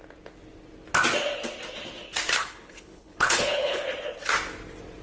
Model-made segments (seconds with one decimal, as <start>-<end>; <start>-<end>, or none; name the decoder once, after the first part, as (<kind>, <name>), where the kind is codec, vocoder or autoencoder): 2.4-3.8 (codec, HILCodec)